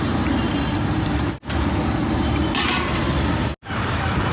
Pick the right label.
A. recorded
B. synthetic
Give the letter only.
A